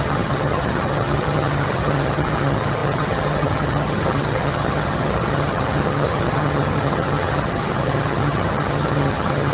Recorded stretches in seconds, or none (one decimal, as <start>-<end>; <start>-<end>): none